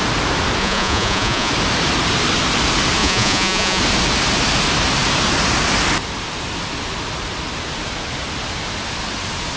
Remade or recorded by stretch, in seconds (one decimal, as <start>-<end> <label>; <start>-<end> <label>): 0.0-0.6 recorded; 0.6-1.5 remade; 1.5-3.0 recorded; 3.0-3.8 remade; 3.8-9.6 recorded